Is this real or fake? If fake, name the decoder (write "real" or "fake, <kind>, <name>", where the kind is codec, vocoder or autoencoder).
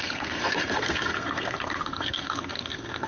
fake, codec, SNAC